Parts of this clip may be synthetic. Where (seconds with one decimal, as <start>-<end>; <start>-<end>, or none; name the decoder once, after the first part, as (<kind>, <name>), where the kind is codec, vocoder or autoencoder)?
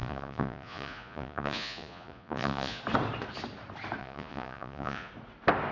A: 0.0-2.8 (vocoder, Vocos); 4.0-5.1